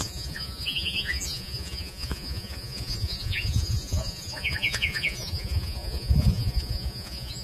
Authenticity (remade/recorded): remade